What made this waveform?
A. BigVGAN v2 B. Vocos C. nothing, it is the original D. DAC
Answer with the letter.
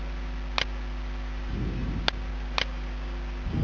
C